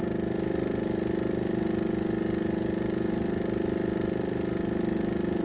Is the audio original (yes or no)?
yes